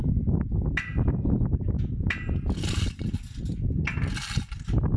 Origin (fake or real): real